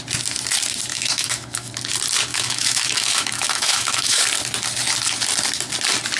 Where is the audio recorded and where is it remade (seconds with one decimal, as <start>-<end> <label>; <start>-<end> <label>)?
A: 0.0-0.9 recorded; 0.9-1.7 remade; 1.7-2.3 recorded; 2.3-4.2 remade; 4.2-6.2 recorded